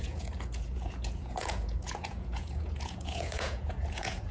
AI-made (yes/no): yes